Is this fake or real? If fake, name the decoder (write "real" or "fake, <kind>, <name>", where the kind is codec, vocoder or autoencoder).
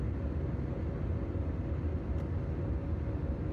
real